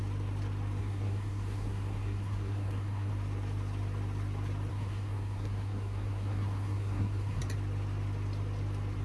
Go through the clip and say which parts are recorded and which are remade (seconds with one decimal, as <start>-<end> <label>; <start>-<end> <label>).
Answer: 0.0-0.8 recorded; 0.8-3.1 remade; 3.1-4.7 recorded; 4.7-7.4 remade; 7.4-9.0 recorded